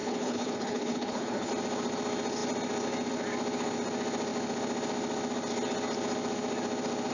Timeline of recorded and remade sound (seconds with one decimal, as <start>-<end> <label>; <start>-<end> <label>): 0.0-1.5 remade; 1.5-7.1 recorded